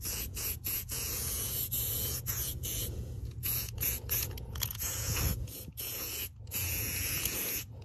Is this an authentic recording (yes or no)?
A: no